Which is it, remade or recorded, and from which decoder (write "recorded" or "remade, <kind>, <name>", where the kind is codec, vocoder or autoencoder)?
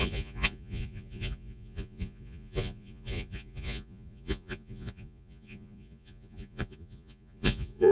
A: remade, vocoder, Vocos